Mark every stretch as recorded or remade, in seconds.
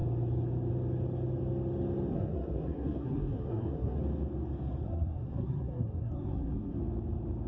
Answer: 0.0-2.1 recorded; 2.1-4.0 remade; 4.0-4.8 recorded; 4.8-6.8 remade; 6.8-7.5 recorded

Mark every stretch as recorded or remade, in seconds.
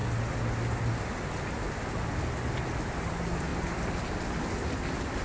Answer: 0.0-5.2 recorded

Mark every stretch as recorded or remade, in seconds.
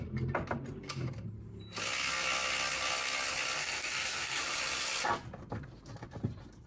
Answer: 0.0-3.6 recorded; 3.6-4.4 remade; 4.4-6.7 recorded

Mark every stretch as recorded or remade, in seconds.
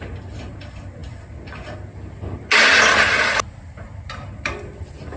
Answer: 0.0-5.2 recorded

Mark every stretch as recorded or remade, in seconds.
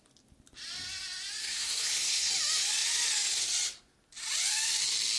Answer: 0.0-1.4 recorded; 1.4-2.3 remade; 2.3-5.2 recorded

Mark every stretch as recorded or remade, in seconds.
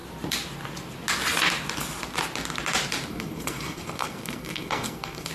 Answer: 0.0-3.1 recorded; 3.1-5.3 remade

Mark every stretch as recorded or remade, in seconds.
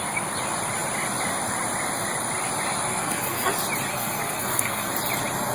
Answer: 0.0-2.9 recorded; 2.9-3.5 remade; 3.5-3.9 recorded; 3.9-4.9 remade; 4.9-5.5 recorded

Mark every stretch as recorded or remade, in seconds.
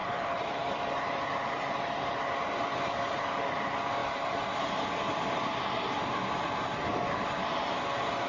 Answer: 0.0-1.2 remade; 1.2-8.3 recorded